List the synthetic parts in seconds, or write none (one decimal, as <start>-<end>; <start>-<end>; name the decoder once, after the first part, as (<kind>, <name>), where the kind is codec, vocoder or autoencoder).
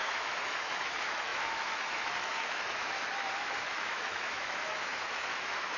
0.0-5.8 (autoencoder, DAC-VAE)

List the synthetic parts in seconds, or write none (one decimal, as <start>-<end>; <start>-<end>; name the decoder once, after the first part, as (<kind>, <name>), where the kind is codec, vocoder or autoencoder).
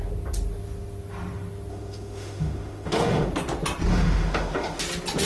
1.7-3.3 (autoencoder, DAC-VAE); 3.9-4.8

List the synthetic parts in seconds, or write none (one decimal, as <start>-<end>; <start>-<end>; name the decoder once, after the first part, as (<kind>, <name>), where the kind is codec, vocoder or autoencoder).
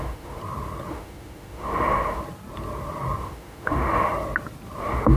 0.0-0.4 (autoencoder, DAC-VAE); 0.9-2.2; 3.2-4.1; 4.8-5.2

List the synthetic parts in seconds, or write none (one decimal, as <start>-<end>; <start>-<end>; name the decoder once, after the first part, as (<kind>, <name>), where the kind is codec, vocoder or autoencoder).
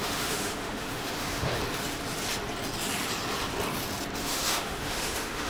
0.0-1.6 (autoencoder, DAC-VAE); 4.2-5.5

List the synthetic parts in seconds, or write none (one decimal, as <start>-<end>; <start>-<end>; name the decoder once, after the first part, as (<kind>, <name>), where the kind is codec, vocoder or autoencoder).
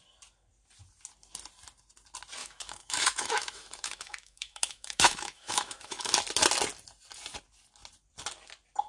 2.4-6.1 (autoencoder, DAC-VAE)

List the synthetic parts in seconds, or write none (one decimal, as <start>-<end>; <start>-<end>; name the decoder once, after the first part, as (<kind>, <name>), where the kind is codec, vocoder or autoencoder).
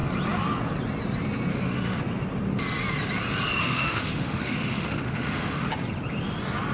1.5-2.0 (autoencoder, DAC-VAE); 3.6-5.7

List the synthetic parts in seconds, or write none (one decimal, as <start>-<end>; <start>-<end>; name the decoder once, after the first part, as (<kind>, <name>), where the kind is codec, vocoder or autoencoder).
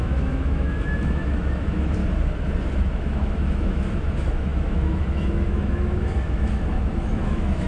0.0-2.0 (autoencoder, DAC-VAE); 2.8-7.7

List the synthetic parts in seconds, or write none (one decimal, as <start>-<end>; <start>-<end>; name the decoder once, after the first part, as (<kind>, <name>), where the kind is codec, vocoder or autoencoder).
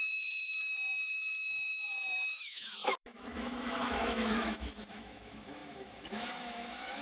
0.0-7.0 (autoencoder, DAC-VAE)